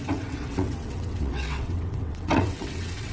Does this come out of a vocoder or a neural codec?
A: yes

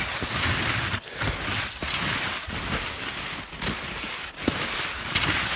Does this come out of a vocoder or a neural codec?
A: no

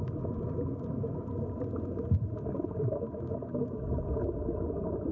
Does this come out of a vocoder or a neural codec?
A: no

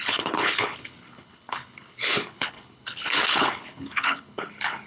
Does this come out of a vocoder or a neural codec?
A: yes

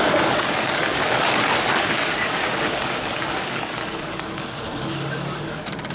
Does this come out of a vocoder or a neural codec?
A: yes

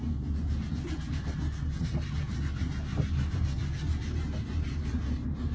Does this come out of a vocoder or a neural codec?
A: no